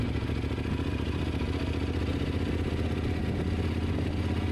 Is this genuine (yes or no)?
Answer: yes